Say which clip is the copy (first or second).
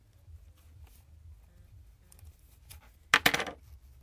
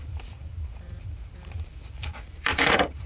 second